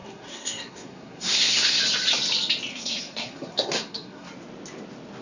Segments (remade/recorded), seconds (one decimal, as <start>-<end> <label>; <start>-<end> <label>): 0.0-1.8 remade; 1.8-2.7 recorded; 2.7-4.3 remade; 4.3-5.2 recorded